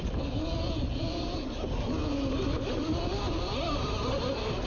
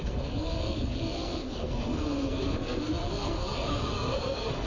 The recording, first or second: first